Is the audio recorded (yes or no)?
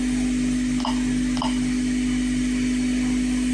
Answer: yes